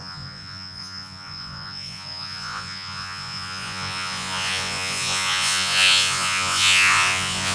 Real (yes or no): no